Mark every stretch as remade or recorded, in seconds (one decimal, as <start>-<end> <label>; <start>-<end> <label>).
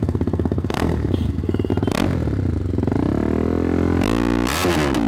0.0-1.7 remade; 1.7-5.1 recorded